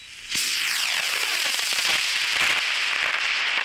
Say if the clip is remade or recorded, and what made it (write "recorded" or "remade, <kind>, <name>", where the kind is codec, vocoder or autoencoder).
recorded